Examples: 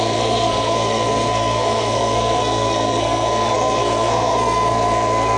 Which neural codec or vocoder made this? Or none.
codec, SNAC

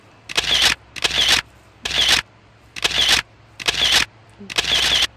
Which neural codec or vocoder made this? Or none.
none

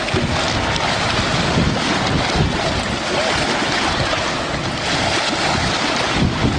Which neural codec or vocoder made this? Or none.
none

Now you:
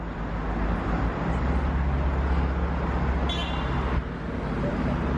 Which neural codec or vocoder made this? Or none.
none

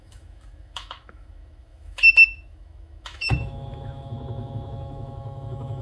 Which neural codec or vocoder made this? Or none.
autoencoder, DAC-VAE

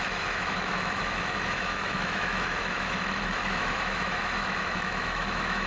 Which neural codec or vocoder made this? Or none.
autoencoder, DAC-VAE